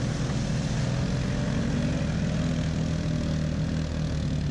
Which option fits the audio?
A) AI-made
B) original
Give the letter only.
B